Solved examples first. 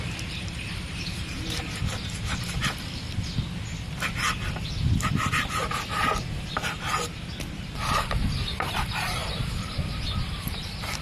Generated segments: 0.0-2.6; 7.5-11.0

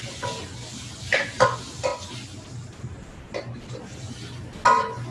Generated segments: none

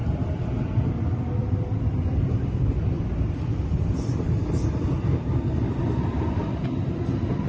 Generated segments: 0.0-7.5